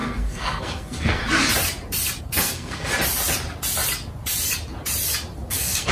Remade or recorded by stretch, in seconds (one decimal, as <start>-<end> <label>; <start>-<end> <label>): 0.0-1.2 remade; 1.2-2.2 recorded; 2.2-2.9 remade; 2.9-5.5 recorded; 5.5-5.9 remade